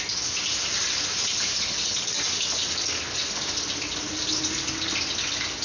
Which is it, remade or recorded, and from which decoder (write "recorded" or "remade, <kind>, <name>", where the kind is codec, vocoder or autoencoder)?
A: recorded